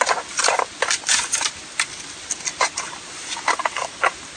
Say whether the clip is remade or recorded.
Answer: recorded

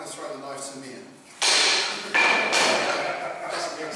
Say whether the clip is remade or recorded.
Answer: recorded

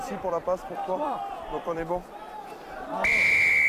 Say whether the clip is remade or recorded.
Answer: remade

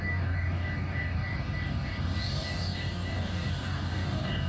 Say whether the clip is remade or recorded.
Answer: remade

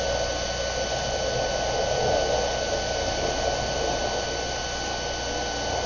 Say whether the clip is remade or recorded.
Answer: recorded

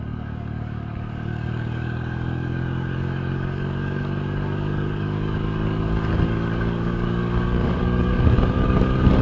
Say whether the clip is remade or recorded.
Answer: remade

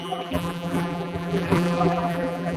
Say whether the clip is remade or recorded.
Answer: remade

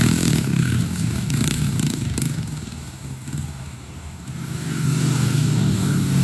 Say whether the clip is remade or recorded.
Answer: remade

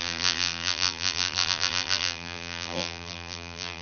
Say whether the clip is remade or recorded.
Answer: remade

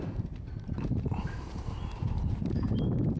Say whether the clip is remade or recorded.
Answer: remade